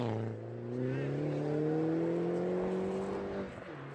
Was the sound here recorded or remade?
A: recorded